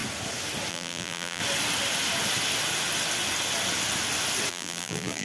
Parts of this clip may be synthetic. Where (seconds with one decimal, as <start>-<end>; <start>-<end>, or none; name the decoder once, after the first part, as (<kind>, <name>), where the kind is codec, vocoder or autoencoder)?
0.7-1.4 (vocoder, BigVGAN v2); 4.5-5.2